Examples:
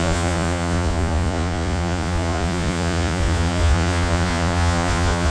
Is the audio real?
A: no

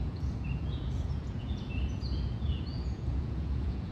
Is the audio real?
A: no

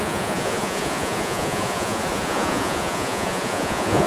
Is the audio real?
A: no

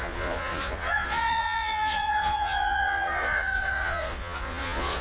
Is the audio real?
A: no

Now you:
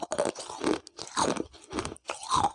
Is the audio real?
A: yes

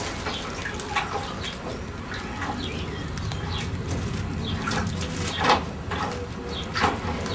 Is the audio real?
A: yes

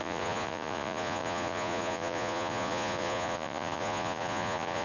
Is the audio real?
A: no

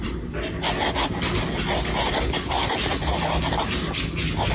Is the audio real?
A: yes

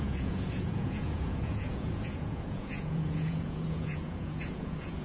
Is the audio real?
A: no